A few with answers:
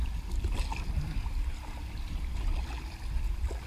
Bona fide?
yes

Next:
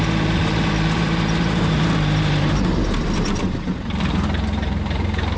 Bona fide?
no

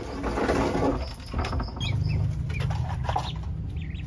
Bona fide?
yes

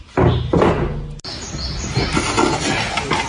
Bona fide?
yes